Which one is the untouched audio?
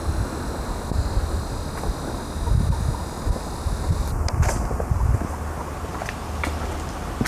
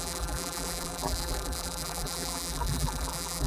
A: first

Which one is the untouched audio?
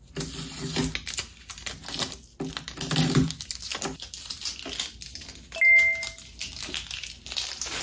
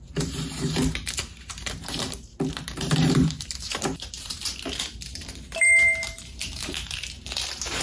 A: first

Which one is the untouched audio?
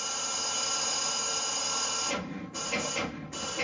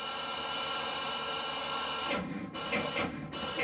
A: first